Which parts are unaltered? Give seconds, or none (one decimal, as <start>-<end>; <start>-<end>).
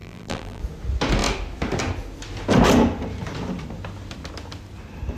0.6-5.2